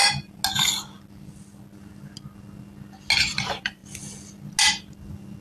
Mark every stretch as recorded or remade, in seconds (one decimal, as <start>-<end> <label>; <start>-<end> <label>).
0.0-3.2 recorded; 3.2-3.8 remade; 3.8-5.4 recorded